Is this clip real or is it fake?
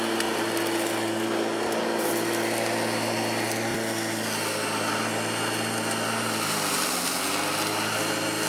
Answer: real